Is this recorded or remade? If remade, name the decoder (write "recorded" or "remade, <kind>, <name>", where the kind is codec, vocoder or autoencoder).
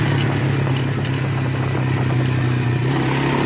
recorded